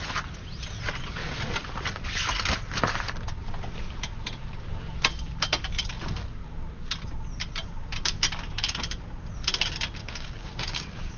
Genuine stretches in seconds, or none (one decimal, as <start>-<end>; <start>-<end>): 0.0-10.0